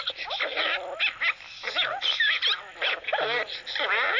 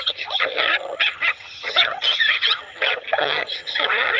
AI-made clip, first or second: second